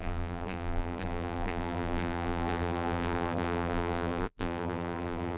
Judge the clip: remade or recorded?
remade